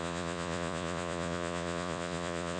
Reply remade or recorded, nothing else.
remade